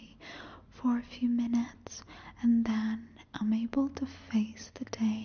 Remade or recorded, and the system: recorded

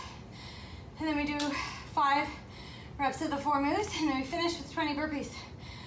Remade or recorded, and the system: recorded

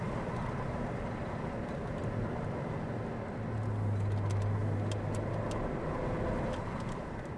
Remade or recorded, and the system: recorded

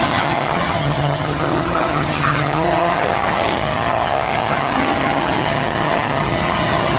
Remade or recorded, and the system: remade, vocoder, HiFi-GAN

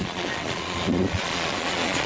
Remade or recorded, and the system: remade, vocoder, Vocos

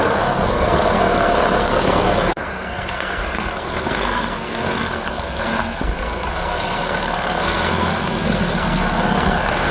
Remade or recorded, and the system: remade, codec, SNAC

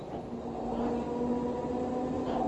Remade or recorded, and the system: recorded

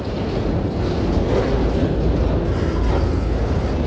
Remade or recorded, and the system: recorded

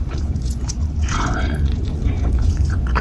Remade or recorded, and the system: remade, vocoder, Vocos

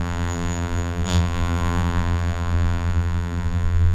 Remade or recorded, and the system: remade, vocoder, BigVGAN v2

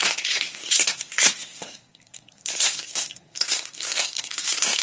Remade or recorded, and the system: remade, codec, SNAC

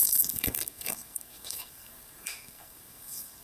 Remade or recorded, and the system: remade, codec, SNAC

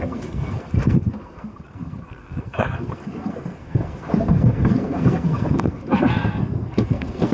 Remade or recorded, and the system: remade, codec, SNAC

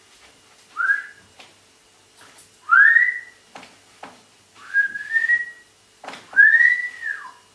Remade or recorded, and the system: recorded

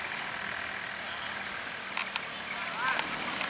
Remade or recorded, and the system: recorded